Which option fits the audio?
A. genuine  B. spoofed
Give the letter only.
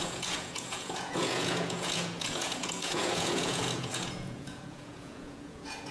B